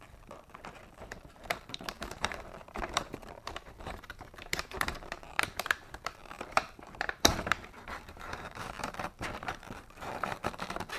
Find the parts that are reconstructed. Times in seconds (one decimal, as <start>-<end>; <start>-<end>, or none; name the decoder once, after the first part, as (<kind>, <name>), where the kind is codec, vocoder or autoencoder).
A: 0.0-11.0 (vocoder, BigVGAN v2)